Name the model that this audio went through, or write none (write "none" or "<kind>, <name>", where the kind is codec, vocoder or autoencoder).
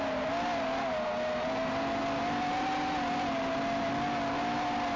none